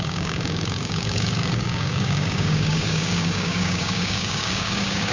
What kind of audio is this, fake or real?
fake